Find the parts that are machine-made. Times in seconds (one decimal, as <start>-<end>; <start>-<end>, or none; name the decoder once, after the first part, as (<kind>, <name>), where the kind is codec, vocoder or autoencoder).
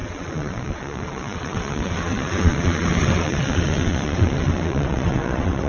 0.0-5.7 (vocoder, WaveNeXt)